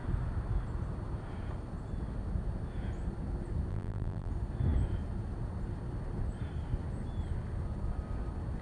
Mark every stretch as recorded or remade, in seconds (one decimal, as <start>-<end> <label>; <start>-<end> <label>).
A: 0.0-3.7 recorded; 3.7-4.3 remade; 4.3-8.6 recorded